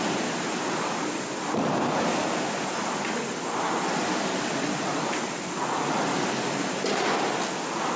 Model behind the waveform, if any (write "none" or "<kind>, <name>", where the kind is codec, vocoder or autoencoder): none